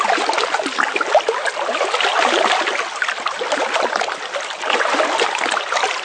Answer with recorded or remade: recorded